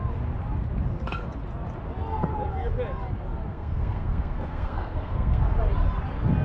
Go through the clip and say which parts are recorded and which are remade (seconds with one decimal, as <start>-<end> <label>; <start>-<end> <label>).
0.0-3.5 recorded; 3.5-5.4 remade; 5.4-6.4 recorded